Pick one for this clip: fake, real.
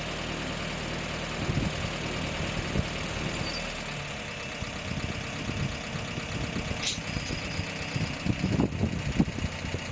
real